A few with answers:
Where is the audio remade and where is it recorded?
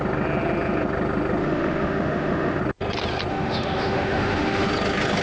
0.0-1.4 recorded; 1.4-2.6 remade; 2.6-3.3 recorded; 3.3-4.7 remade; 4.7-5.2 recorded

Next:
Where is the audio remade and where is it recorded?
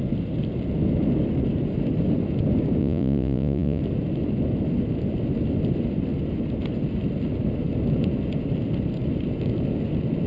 0.0-2.8 recorded; 2.8-3.8 remade; 3.8-10.3 recorded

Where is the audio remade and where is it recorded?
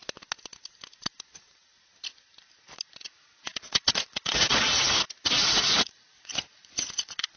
0.0-3.0 recorded; 3.0-7.4 remade